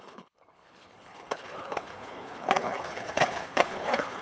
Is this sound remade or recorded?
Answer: remade